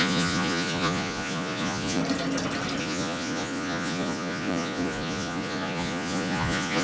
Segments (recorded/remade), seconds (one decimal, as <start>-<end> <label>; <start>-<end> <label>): 0.0-2.0 remade; 2.0-2.8 recorded; 2.8-6.8 remade